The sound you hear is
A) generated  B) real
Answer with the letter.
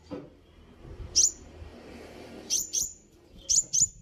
B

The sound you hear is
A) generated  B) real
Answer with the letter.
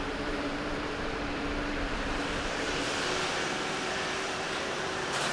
A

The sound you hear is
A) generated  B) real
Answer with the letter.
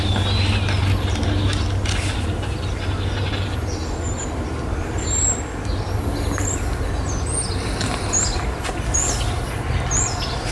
B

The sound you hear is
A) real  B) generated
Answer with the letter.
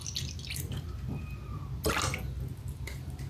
A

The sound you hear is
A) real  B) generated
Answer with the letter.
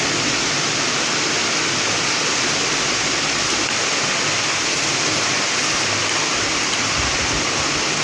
A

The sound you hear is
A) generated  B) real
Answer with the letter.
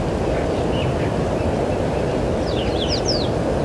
B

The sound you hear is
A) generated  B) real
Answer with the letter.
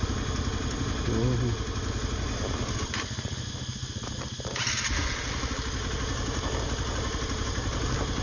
B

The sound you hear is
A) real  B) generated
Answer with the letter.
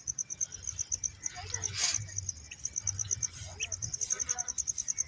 A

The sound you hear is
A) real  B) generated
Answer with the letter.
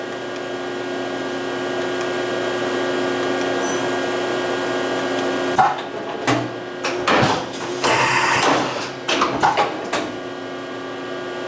A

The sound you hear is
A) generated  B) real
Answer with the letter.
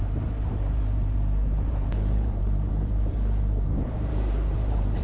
A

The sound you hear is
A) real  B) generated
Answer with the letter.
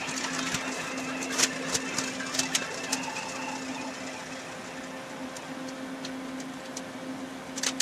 A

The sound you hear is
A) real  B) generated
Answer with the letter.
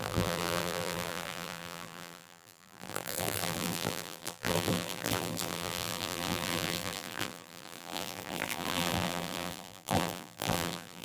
B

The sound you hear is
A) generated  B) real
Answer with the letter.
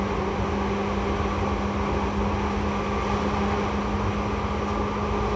B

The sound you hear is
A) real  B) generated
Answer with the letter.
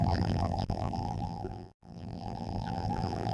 B